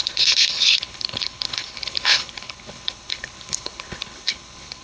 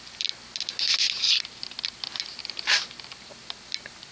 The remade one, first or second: first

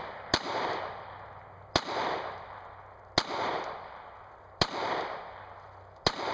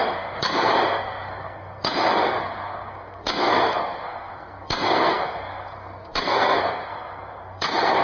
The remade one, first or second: second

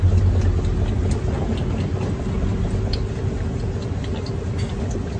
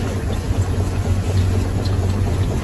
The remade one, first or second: second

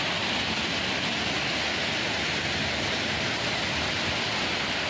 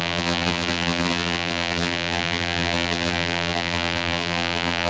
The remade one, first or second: second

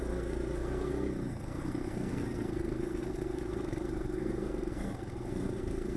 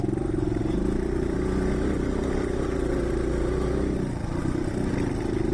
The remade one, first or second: first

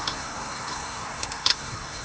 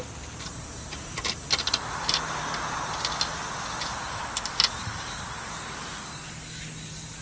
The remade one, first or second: first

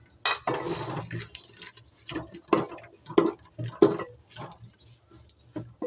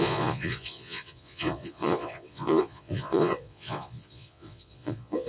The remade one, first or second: second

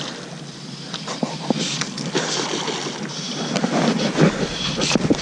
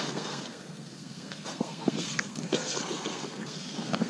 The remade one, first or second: second